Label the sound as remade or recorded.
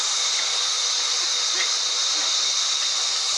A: recorded